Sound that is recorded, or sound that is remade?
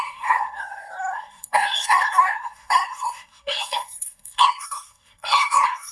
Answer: remade